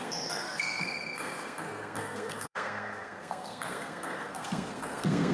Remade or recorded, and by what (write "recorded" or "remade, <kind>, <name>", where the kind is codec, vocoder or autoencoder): remade, codec, SNAC